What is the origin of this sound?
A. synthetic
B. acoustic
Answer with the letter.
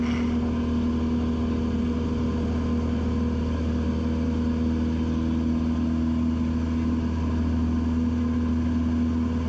B